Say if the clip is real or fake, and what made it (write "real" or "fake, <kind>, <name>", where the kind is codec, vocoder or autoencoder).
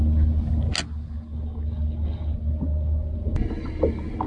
real